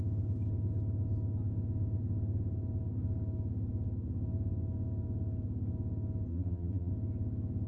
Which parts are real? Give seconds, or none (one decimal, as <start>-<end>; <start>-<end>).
0.0-6.3; 6.9-7.7